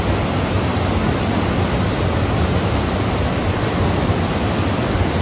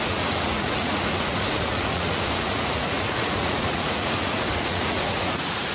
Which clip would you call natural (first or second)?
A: first